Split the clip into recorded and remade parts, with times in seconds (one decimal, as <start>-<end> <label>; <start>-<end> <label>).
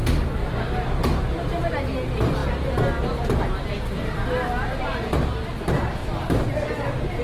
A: 0.0-1.2 remade; 1.2-6.0 recorded; 6.0-7.2 remade